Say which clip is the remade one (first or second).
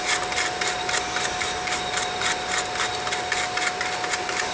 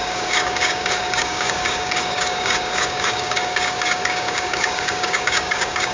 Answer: second